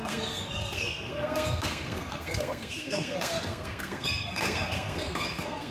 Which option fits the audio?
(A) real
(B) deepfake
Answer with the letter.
B